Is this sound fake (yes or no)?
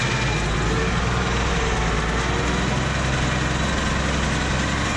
no